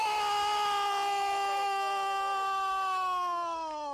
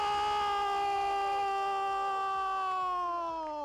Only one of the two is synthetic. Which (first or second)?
first